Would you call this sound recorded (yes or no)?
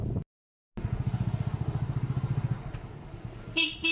yes